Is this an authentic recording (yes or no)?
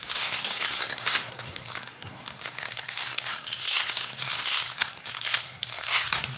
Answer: no